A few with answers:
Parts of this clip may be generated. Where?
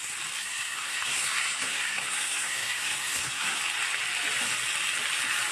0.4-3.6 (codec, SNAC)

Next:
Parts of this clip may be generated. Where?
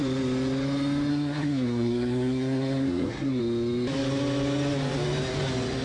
1.1-3.4 (codec, SNAC)